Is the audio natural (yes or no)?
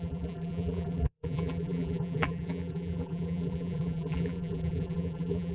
no